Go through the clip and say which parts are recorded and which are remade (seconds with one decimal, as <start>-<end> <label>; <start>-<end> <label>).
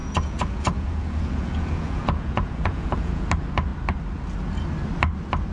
0.0-3.3 remade; 3.3-5.5 recorded